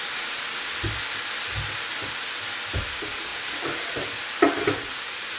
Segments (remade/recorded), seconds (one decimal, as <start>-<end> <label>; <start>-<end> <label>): 0.0-5.4 recorded